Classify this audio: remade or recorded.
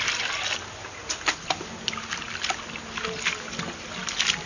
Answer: recorded